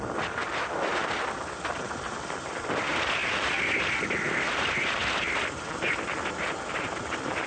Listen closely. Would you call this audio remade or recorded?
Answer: recorded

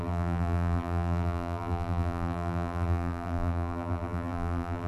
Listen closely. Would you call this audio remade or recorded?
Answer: remade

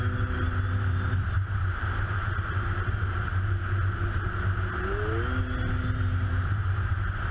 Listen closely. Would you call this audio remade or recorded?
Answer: recorded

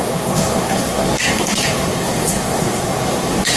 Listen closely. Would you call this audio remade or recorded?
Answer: remade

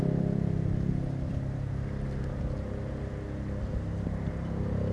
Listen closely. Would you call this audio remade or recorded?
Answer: recorded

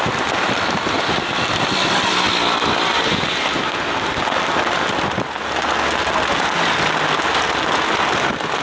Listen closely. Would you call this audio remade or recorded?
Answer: recorded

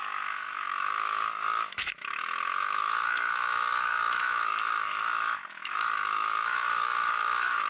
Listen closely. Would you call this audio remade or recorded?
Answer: remade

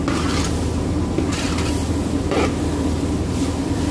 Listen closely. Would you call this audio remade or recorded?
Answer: recorded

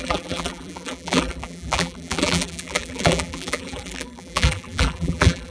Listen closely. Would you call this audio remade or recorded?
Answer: remade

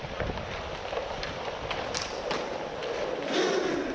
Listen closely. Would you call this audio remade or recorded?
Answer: remade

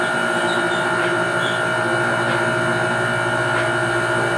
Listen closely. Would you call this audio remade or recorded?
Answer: recorded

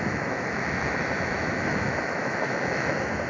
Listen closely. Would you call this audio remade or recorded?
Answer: remade